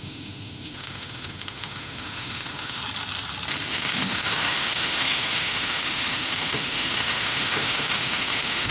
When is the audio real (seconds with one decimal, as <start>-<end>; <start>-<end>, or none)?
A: 2.8-3.7